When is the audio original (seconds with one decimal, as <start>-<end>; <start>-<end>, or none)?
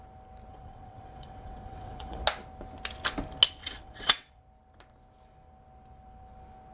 0.0-0.5; 2.2-3.6; 4.4-6.7